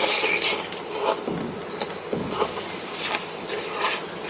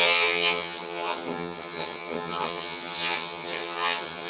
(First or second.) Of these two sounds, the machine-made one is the second